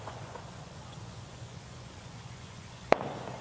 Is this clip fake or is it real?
fake